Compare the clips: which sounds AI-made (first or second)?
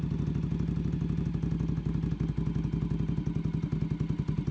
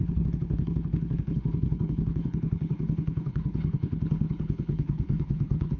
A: second